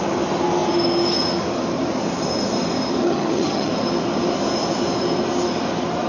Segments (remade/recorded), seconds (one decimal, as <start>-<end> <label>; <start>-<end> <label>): 0.0-3.0 recorded; 3.0-3.7 remade; 3.7-6.1 recorded